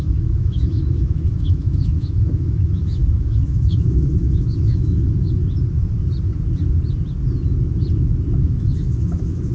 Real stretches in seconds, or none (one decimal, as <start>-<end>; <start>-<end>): 5.4-8.4